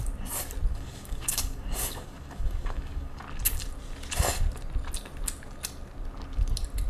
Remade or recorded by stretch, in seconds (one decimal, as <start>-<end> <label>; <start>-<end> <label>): 0.0-0.7 recorded; 0.7-3.2 remade; 3.2-6.9 recorded